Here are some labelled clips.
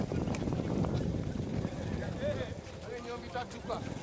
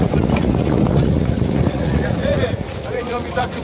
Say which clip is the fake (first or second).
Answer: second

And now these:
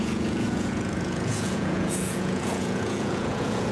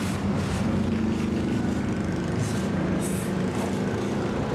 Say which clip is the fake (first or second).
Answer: first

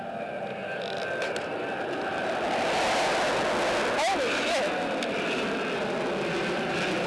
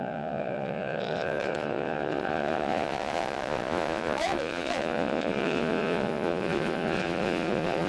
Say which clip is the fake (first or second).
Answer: second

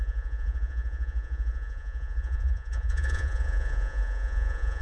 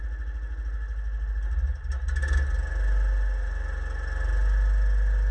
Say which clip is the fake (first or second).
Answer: first